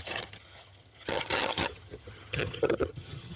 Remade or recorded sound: remade